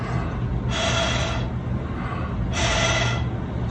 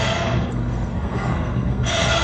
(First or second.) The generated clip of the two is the second